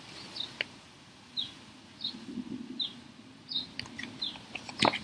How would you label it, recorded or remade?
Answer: recorded